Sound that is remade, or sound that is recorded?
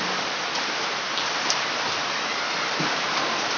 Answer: remade